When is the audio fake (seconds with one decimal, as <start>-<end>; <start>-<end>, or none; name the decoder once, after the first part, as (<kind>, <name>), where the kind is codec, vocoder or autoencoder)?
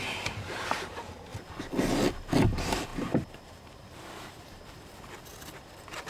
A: 0.0-1.3 (vocoder, BigVGAN v2); 2.4-5.3